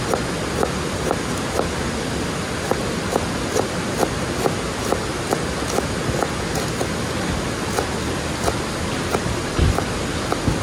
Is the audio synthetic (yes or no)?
no